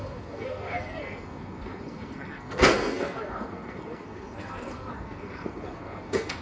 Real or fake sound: fake